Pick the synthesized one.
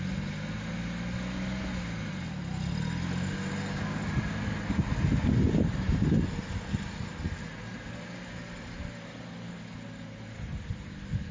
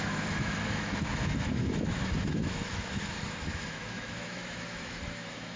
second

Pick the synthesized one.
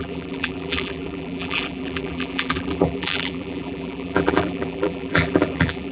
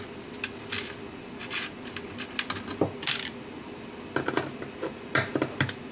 first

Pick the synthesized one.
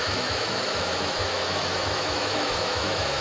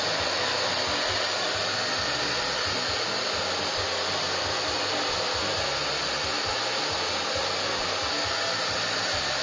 first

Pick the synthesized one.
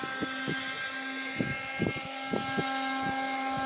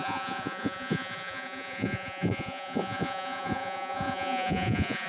second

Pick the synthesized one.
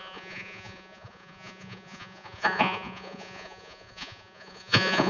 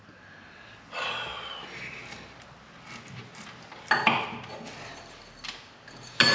first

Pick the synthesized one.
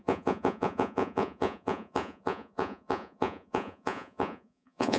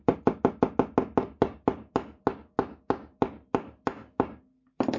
first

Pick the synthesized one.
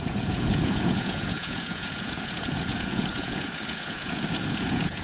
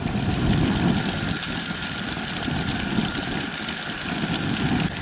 first